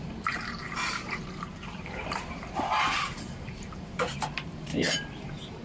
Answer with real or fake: fake